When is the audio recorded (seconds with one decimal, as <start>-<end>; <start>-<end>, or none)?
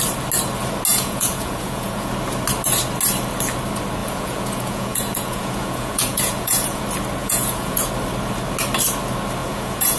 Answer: 0.0-0.9; 2.1-4.0; 6.8-7.2; 7.9-9.4